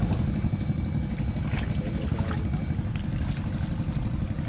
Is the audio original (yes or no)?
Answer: yes